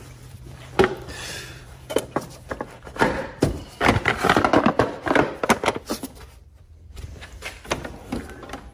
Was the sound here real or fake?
fake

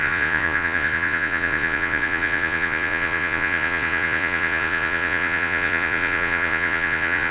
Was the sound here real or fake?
fake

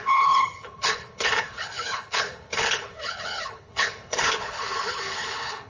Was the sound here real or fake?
fake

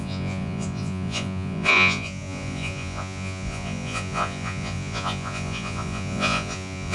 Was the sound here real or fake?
fake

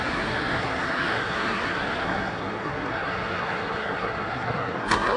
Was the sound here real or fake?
fake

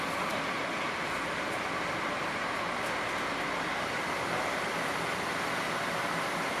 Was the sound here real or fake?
real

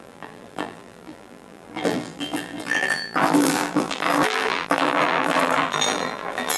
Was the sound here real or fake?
fake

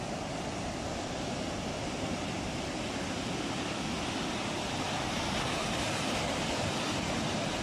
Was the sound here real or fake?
real